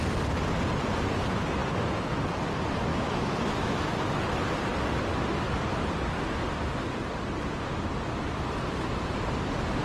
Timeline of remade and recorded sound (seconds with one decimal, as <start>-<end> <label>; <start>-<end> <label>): 0.0-2.9 recorded; 2.9-3.9 remade; 3.9-9.8 recorded